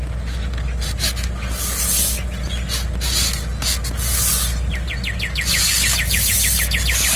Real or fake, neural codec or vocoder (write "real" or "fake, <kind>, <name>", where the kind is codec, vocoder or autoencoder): real